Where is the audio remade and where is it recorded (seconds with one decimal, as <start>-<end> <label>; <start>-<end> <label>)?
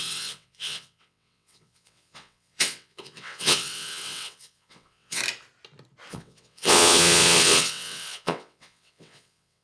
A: 0.0-5.2 remade; 5.2-6.1 recorded; 6.1-9.6 remade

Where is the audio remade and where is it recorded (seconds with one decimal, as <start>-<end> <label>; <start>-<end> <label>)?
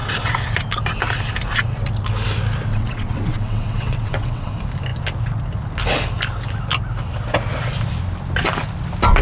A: 0.0-2.7 recorded; 2.7-4.5 remade; 4.5-9.2 recorded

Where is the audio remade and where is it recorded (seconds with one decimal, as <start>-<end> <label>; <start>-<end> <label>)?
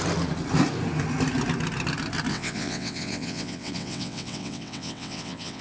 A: 0.0-2.3 recorded; 2.3-5.6 remade